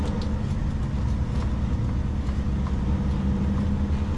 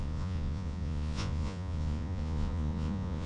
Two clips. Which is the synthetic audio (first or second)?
second